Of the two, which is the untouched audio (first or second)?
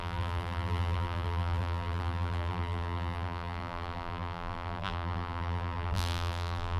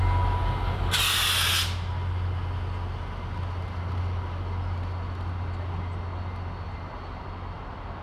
second